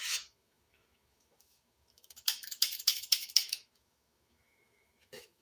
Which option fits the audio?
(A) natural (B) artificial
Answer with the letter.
B